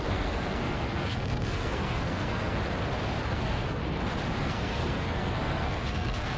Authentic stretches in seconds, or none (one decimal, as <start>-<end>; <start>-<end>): 2.6-3.2; 3.8-4.4